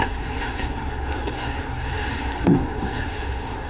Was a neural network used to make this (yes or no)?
yes